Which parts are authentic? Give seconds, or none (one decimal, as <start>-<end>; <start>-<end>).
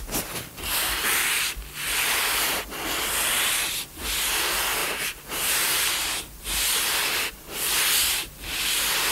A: 0.0-4.8; 6.2-9.1